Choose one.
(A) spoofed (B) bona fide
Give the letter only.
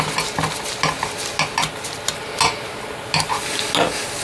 B